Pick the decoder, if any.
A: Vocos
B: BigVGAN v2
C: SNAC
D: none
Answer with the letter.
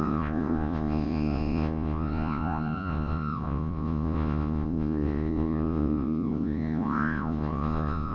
A